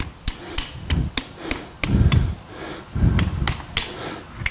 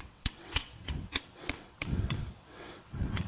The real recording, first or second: first